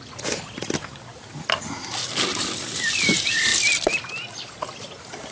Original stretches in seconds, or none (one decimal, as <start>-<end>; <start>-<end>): 0.0-5.3